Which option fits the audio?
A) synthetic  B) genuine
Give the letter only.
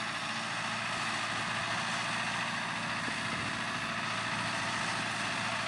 B